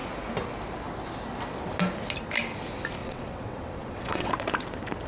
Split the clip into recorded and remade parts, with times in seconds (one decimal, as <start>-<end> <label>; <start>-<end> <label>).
0.0-3.0 recorded; 3.0-4.3 remade; 4.3-5.1 recorded